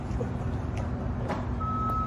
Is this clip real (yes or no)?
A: yes